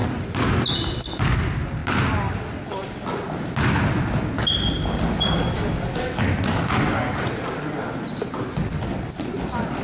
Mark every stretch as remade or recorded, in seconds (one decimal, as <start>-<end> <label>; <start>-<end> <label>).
0.0-9.8 recorded